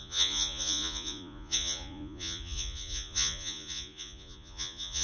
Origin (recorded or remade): remade